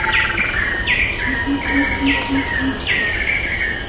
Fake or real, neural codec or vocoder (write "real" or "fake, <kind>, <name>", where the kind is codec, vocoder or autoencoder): real